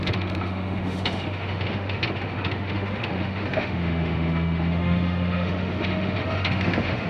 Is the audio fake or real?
fake